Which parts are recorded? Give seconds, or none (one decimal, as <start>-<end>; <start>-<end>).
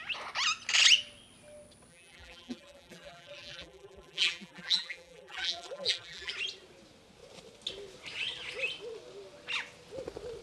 0.0-1.9; 6.3-10.4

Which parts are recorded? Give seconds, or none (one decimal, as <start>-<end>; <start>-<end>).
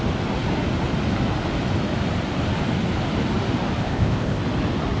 0.0-3.8; 4.4-5.0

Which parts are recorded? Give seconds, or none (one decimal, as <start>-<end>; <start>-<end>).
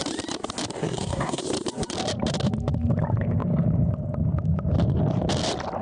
0.0-0.8; 1.4-5.8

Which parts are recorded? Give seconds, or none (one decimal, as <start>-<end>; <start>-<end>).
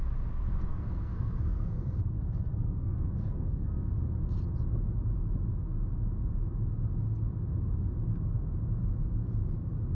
0.0-0.7; 3.9-9.9